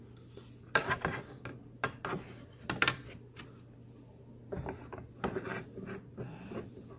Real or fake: real